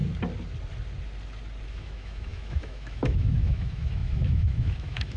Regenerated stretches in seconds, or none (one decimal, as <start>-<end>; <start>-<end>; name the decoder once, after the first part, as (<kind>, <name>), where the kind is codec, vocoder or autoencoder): 1.7-5.2 (autoencoder, DAC-VAE)